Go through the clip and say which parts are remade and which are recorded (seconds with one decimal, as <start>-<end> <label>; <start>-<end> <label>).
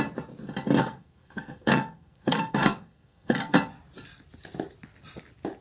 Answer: 0.0-0.8 recorded; 0.8-3.5 remade; 3.5-5.6 recorded